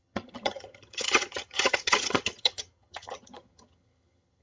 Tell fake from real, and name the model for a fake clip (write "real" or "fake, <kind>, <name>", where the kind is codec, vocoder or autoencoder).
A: fake, vocoder, HiFi-GAN